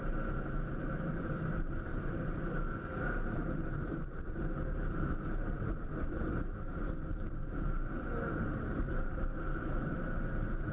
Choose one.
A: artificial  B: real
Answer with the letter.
A